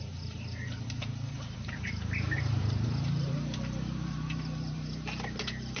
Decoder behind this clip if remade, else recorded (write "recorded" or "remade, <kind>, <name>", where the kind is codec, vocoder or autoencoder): remade, vocoder, BigVGAN v2